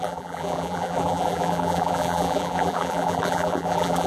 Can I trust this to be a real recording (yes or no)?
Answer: no